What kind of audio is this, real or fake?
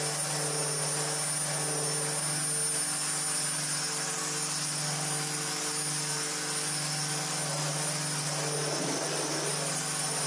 real